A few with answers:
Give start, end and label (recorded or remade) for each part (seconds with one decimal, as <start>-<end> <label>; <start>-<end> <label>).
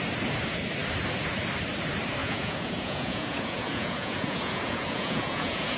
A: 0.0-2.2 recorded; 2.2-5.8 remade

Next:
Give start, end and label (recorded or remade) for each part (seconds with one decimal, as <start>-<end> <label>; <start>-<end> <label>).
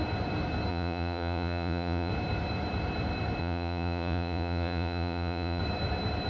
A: 0.0-0.7 recorded; 0.7-2.1 remade; 2.1-3.4 recorded; 3.4-5.6 remade; 5.6-6.3 recorded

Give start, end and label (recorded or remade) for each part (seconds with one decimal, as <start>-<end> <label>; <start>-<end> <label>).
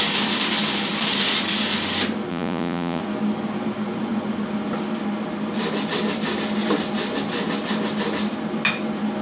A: 0.0-2.3 recorded; 2.3-3.0 remade; 3.0-9.2 recorded